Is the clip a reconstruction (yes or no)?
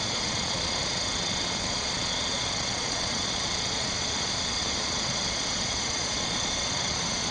yes